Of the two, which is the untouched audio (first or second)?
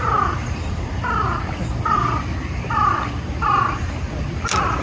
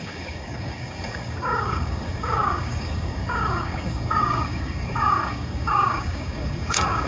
first